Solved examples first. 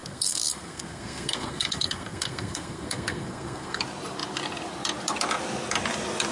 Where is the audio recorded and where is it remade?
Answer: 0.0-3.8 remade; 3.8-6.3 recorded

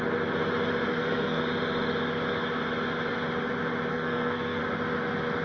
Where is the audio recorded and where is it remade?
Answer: 0.0-0.9 recorded; 0.9-1.4 remade; 1.4-3.9 recorded; 3.9-4.6 remade; 4.6-5.4 recorded

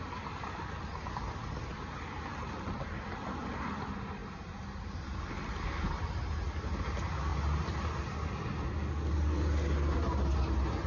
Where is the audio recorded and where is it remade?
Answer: 0.0-4.2 recorded; 4.2-5.2 remade; 5.2-10.9 recorded

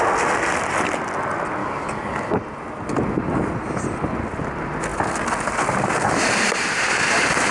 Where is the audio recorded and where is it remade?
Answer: 0.0-1.6 recorded; 1.6-2.3 remade; 2.3-7.5 recorded

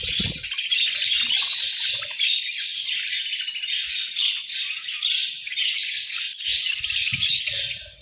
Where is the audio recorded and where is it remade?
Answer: 0.0-8.0 recorded

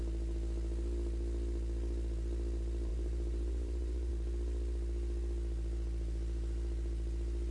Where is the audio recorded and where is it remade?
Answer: 0.0-2.9 recorded; 2.9-4.1 remade; 4.1-7.5 recorded

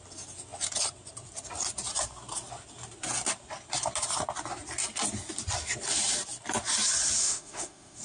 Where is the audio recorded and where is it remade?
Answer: 0.0-7.2 recorded; 7.2-8.0 remade